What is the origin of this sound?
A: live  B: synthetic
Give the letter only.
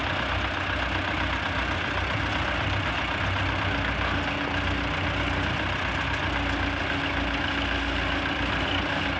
A